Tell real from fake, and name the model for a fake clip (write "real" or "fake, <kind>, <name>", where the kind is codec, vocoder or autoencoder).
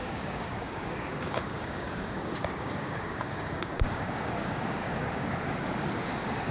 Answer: fake, codec, DAC